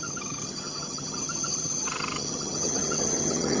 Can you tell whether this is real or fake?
fake